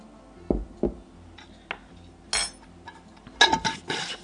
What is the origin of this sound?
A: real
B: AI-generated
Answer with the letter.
A